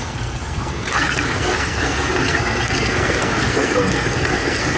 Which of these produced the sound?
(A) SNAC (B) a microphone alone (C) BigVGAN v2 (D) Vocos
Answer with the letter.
A